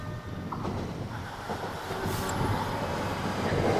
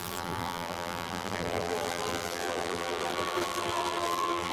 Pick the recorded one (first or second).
first